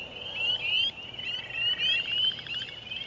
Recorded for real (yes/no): no